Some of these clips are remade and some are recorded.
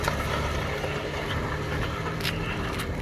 recorded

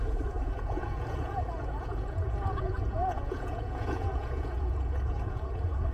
remade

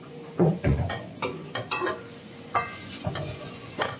remade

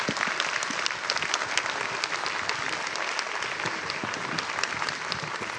recorded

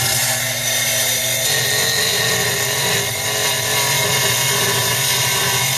recorded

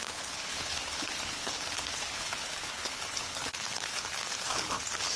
remade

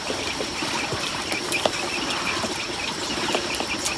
recorded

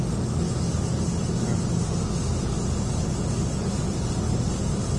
recorded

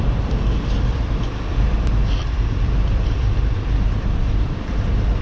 remade